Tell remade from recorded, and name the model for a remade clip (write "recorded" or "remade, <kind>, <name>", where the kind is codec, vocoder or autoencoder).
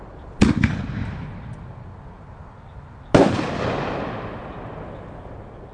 recorded